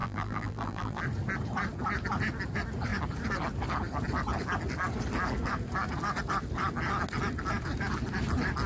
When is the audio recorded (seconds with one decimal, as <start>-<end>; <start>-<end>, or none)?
1.0-8.7